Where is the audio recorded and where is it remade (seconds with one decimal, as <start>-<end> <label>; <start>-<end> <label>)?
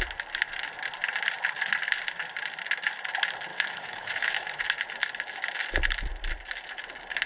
0.0-3.5 recorded; 3.5-4.6 remade; 4.6-7.3 recorded